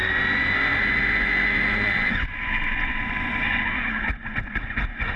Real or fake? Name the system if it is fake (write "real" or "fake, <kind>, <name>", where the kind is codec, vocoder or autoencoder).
fake, vocoder, Vocos